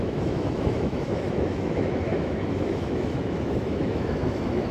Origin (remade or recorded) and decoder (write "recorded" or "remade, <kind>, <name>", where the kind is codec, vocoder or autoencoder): remade, autoencoder, DAC-VAE